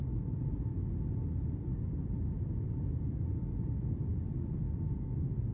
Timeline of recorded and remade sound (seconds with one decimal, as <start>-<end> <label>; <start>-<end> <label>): 0.0-5.5 recorded